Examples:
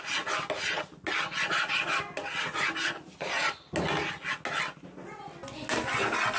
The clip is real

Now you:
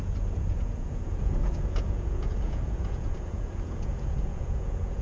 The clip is fake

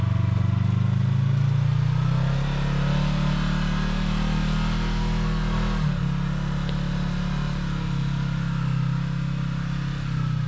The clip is real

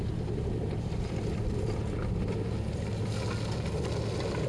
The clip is real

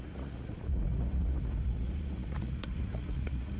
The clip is fake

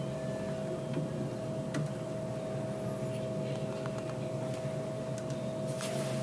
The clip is real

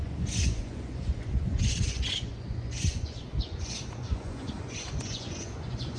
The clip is fake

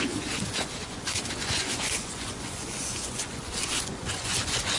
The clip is fake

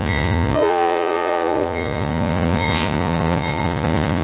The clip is fake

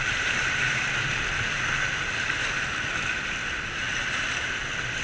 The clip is real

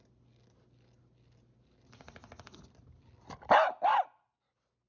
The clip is real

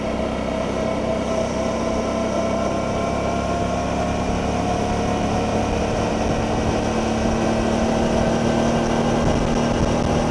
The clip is real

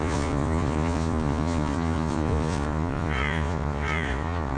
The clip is fake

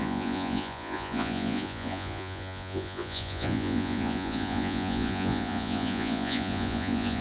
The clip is fake